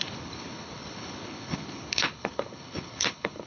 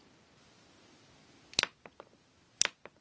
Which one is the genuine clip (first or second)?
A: second